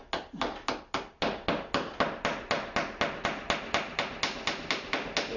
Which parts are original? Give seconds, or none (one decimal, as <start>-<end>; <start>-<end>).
0.0-5.4